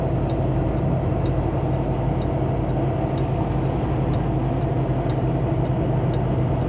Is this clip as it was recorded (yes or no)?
yes